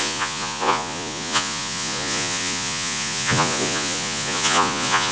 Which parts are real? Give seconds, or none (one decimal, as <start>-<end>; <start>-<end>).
none